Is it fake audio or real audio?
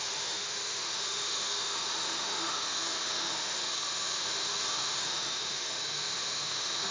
fake